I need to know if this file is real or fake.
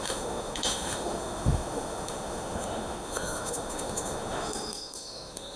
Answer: fake